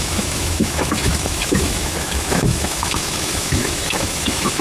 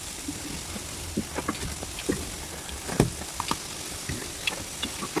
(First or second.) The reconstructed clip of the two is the first